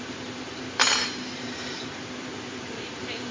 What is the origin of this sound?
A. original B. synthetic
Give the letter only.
B